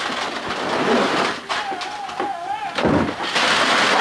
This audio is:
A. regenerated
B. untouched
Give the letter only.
B